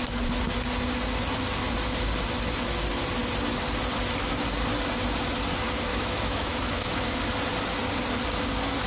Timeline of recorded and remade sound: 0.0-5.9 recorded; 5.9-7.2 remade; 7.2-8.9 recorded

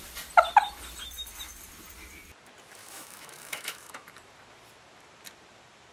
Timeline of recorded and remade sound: 0.0-2.8 recorded; 2.8-4.1 remade; 4.1-5.9 recorded